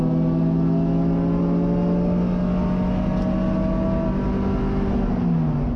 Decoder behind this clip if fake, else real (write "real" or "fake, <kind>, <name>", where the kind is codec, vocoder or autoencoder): real